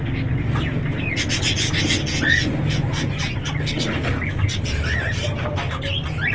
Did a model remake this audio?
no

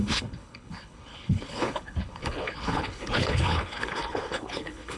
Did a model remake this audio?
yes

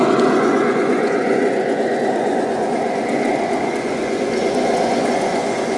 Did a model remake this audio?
yes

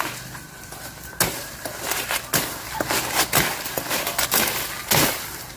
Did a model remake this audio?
no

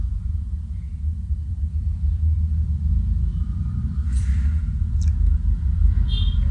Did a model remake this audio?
yes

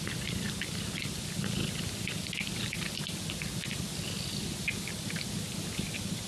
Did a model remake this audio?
no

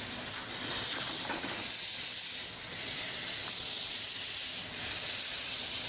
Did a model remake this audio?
no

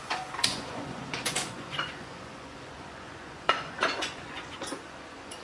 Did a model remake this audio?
yes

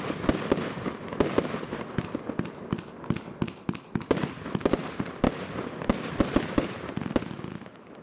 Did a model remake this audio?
no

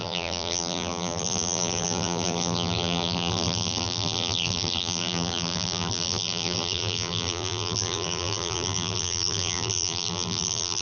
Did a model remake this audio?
yes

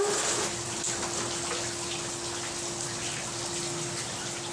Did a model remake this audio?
no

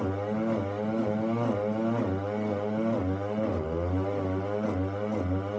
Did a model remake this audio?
no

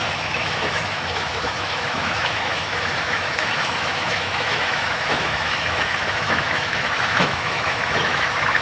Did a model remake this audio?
yes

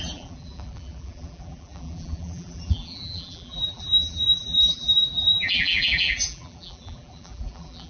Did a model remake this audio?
yes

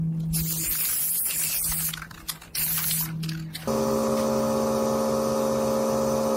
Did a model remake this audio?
no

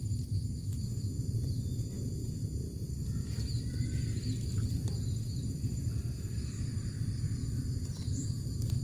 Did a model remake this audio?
yes